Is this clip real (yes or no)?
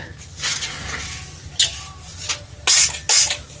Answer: yes